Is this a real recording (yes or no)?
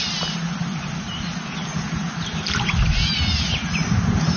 yes